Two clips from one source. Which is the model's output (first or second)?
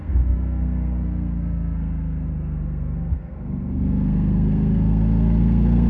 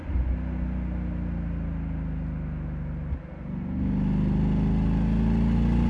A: first